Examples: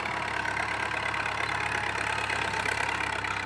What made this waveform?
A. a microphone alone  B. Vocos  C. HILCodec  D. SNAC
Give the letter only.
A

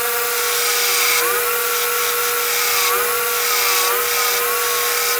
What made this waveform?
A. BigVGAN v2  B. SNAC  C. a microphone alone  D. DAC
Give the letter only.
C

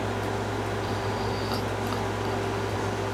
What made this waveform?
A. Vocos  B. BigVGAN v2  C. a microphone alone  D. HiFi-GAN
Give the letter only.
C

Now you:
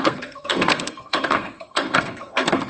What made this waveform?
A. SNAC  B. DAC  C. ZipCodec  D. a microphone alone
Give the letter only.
A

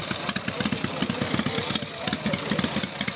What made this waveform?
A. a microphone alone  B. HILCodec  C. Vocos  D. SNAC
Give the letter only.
A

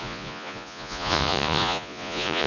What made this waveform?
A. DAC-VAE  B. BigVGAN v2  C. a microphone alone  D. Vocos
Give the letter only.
D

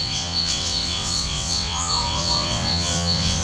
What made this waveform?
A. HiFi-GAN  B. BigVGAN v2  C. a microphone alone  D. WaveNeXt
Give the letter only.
D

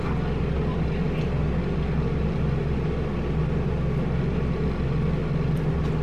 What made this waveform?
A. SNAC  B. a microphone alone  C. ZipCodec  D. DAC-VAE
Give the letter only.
B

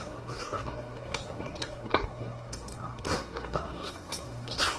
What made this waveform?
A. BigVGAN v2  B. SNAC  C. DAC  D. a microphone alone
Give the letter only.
B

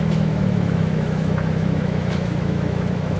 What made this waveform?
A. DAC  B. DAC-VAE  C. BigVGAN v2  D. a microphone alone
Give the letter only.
B